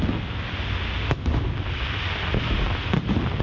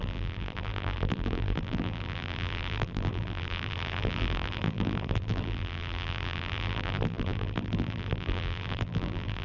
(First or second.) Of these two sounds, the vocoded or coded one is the second